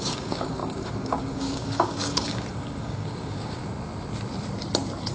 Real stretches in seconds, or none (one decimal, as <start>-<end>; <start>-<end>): 3.6-5.1